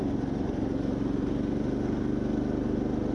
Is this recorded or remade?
recorded